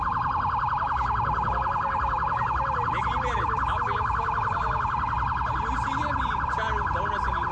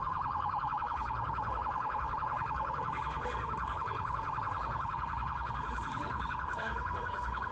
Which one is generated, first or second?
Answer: second